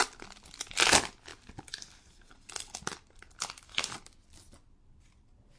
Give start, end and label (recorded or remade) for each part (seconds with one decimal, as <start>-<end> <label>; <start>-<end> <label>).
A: 0.0-5.6 recorded